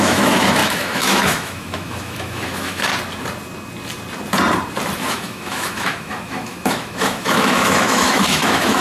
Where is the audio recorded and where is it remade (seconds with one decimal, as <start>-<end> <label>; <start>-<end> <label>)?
0.0-2.9 remade; 2.9-5.1 recorded; 5.1-8.8 remade